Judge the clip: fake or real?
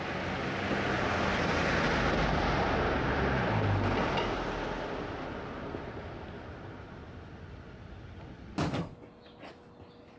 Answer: real